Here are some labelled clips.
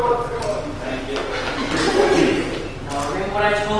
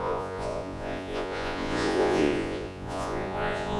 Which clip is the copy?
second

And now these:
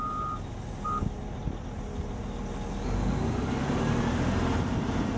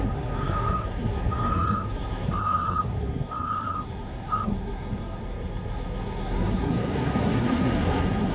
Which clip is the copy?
second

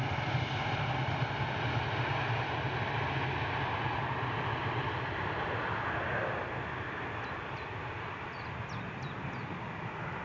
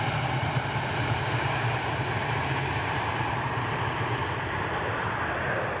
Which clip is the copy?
second